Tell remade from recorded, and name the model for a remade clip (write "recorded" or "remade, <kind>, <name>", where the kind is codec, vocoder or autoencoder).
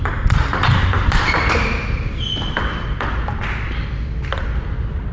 recorded